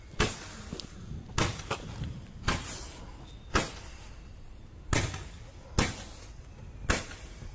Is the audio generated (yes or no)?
no